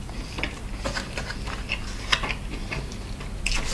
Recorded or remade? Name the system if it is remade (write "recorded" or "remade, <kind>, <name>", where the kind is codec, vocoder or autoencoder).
recorded